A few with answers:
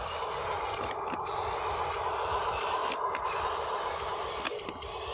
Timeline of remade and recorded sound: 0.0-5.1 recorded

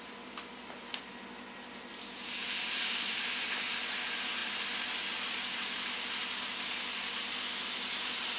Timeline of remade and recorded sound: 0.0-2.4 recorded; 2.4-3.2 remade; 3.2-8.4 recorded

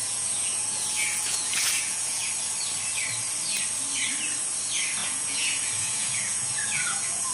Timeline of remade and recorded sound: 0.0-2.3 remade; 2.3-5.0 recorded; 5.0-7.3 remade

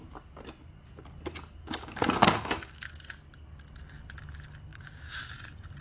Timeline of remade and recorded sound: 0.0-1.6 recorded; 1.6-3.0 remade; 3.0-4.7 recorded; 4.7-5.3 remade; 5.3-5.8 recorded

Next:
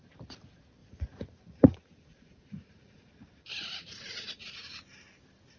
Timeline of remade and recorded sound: 0.0-0.8 recorded; 0.8-3.1 remade; 3.1-3.5 recorded; 3.5-4.7 remade; 4.7-5.6 recorded

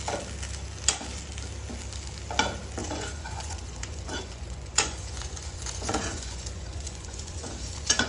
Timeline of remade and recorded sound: 0.0-2.8 recorded; 2.8-8.1 remade

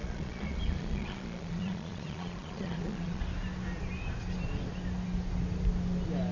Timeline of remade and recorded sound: 0.0-3.2 remade; 3.2-6.3 recorded